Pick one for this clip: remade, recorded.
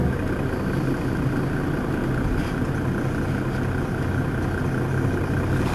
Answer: recorded